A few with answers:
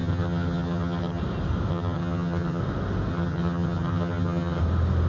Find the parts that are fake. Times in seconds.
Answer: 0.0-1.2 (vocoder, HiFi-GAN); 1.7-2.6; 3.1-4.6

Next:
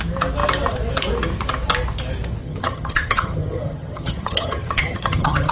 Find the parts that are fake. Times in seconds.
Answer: 2.4-5.5 (vocoder, HiFi-GAN)

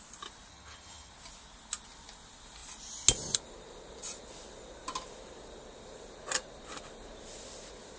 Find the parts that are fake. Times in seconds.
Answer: 0.5-1.1 (vocoder, HiFi-GAN)

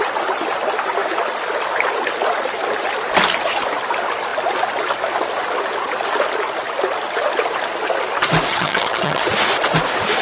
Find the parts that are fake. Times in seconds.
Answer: 8.5-9.2 (vocoder, HiFi-GAN)

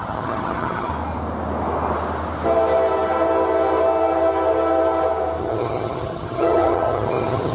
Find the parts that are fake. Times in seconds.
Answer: 0.0-0.9 (vocoder, HiFi-GAN); 5.4-7.5

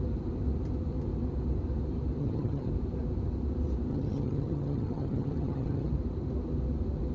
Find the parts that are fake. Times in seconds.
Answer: 2.2-2.7 (vocoder, HiFi-GAN); 3.9-5.9